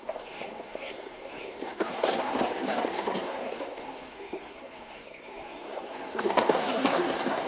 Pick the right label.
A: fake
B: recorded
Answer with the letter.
A